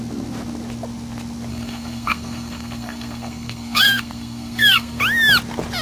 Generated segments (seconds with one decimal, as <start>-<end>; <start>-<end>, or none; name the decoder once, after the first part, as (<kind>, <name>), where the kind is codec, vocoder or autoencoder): 1.5-5.0 (codec, SNAC)